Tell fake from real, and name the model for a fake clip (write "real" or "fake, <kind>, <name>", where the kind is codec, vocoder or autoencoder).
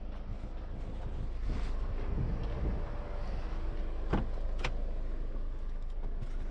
real